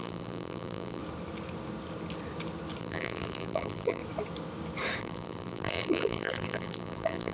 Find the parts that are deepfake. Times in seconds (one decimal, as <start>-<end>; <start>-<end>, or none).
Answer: 0.0-1.0; 2.8-4.0; 5.0-7.3